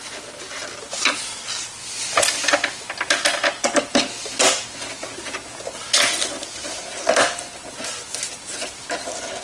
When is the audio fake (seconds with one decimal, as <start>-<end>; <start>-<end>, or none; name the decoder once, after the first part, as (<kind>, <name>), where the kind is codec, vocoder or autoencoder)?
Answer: none